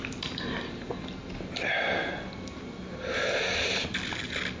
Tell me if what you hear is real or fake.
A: real